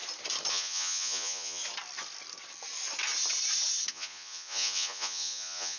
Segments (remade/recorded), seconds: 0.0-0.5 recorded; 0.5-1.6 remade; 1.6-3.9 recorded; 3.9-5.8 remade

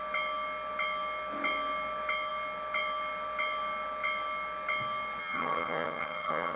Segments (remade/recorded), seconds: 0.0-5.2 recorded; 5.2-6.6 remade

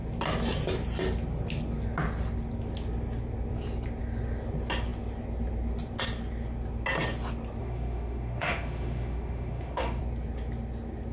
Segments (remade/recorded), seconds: 0.0-7.6 recorded; 7.6-10.0 remade; 10.0-11.1 recorded

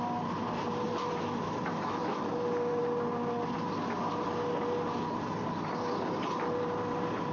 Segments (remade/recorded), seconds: 0.0-0.9 recorded; 0.9-2.3 remade; 2.3-7.3 recorded

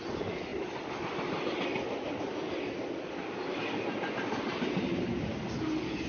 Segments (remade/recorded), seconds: 0.0-6.1 recorded